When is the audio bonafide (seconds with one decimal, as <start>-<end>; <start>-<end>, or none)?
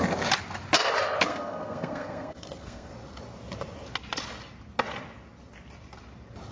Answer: 0.0-1.3; 2.9-6.5